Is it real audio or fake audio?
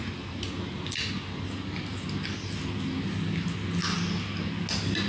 real